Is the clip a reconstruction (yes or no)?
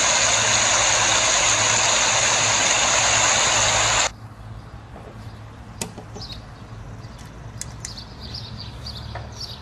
yes